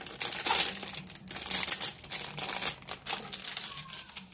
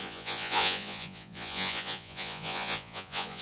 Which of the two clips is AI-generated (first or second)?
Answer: second